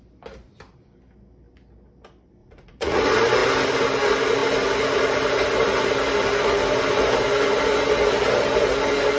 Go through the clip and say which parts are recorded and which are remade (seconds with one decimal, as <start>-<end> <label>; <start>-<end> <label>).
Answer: 0.0-2.4 recorded; 2.4-3.0 remade; 3.0-9.2 recorded

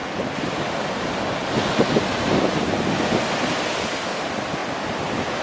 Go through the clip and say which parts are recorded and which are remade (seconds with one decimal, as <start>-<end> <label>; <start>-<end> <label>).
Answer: 0.0-5.4 recorded